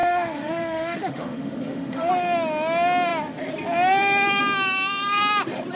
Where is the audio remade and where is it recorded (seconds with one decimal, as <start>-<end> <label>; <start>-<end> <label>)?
0.0-2.1 remade; 2.1-5.8 recorded

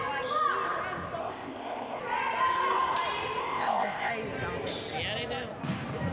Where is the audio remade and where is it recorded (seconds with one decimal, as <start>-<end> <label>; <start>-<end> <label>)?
0.0-1.2 recorded; 1.2-2.0 remade; 2.0-3.4 recorded; 3.4-4.1 remade; 4.1-6.1 recorded